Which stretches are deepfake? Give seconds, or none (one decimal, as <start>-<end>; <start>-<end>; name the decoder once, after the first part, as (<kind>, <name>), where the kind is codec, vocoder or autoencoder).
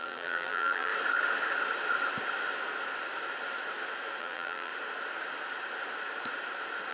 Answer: 0.0-0.9 (vocoder, BigVGAN v2); 4.2-4.7